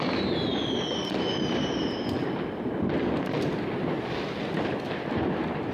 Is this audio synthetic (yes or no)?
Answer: no